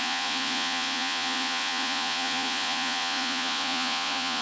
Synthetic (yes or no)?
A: yes